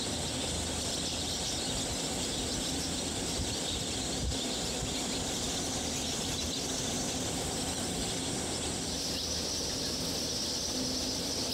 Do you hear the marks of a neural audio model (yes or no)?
no